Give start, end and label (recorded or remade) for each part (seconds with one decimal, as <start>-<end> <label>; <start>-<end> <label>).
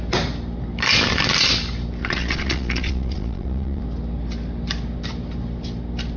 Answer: 0.0-2.0 recorded; 2.0-3.8 remade; 3.8-6.2 recorded